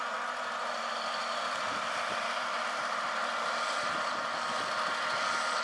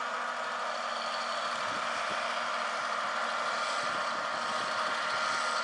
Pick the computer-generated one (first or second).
first